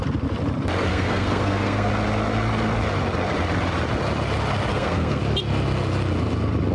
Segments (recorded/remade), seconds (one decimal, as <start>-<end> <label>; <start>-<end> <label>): 0.0-0.9 recorded; 0.9-1.9 remade; 1.9-4.7 recorded; 4.7-5.2 remade; 5.2-6.7 recorded